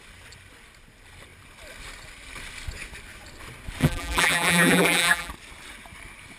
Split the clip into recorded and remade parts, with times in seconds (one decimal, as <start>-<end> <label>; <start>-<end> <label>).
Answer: 0.0-3.8 recorded; 3.8-5.3 remade; 5.3-6.4 recorded